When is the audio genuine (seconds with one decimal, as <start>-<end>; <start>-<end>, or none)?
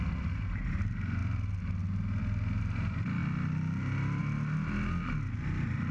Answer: 0.0-5.9